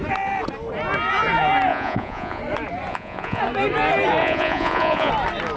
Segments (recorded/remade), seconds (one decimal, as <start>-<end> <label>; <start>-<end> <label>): 0.0-1.7 recorded; 1.7-2.4 remade; 2.4-2.9 recorded; 2.9-3.4 remade; 3.4-4.2 recorded; 4.2-5.1 remade; 5.1-5.6 recorded